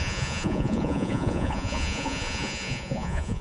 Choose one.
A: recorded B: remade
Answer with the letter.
B